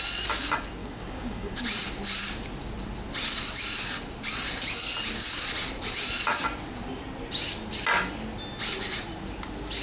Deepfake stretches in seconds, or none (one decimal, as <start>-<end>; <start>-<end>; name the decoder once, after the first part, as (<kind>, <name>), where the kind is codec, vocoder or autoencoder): 0.8-1.6 (codec, DAC)